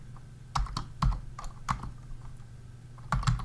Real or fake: real